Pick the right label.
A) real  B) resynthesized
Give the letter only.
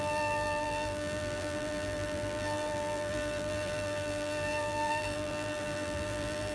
B